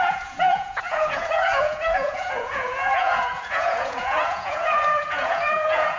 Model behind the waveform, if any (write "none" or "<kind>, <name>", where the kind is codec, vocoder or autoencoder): vocoder, Vocos